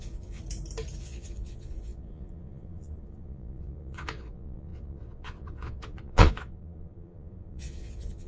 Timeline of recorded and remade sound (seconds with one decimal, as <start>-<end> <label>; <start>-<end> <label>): 0.0-0.4 remade; 0.4-1.0 recorded; 1.0-8.3 remade